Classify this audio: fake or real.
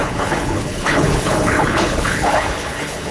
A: fake